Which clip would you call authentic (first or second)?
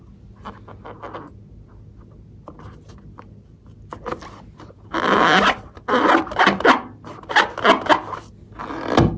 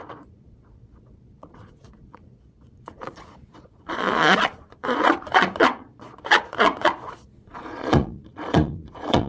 first